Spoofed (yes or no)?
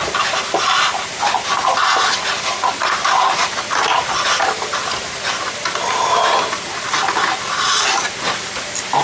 no